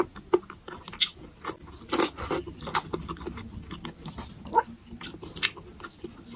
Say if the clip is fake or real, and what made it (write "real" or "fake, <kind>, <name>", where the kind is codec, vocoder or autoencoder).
real